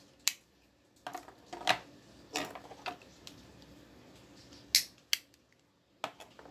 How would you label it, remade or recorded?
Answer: recorded